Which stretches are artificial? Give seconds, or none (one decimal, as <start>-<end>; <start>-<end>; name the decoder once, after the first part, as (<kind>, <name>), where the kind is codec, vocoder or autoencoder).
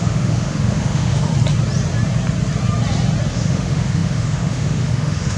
0.0-1.3 (autoencoder, DAC-VAE); 3.3-5.4